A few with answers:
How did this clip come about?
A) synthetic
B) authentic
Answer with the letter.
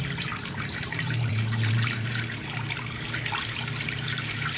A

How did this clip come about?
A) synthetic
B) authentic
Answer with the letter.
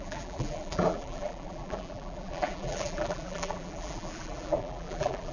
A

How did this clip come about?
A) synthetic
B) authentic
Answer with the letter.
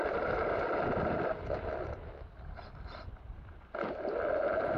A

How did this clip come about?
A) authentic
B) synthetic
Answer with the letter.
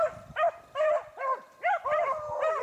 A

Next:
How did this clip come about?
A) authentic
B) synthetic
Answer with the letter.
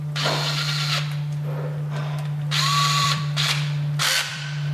B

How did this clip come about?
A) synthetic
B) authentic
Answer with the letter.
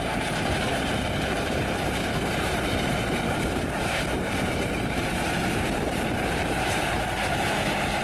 A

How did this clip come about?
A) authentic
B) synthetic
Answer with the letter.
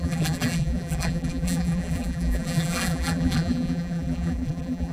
B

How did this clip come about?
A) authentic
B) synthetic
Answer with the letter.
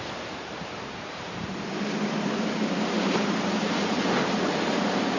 B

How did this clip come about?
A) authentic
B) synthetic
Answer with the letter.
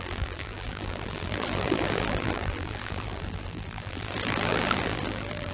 B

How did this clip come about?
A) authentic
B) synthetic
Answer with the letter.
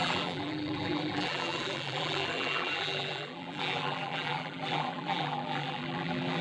B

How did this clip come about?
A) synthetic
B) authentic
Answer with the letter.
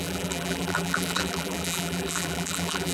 A